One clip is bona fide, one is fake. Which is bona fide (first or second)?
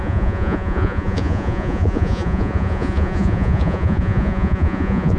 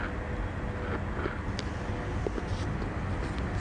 second